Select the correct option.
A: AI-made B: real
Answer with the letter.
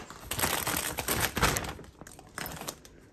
B